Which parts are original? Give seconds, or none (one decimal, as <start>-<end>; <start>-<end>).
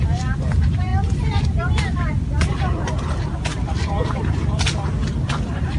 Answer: none